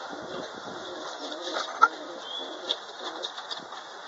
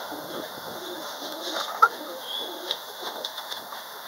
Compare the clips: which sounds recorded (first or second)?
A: first